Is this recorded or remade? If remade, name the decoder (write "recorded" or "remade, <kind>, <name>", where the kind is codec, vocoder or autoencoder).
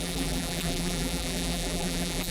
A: remade, vocoder, BigVGAN v2